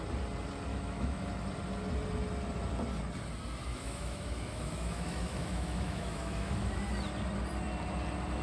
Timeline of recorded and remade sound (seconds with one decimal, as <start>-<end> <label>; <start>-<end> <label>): 0.0-0.7 recorded; 0.7-1.3 remade; 1.3-3.7 recorded; 3.7-6.8 remade; 6.8-8.4 recorded